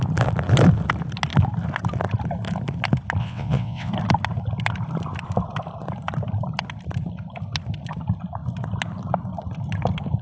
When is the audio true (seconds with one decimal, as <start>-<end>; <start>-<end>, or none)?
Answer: 0.0-3.2; 3.9-10.2